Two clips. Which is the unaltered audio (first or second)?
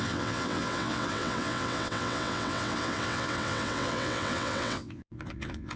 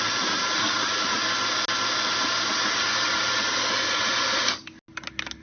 second